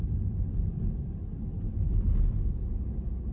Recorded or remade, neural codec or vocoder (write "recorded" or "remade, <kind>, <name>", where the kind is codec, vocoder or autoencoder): recorded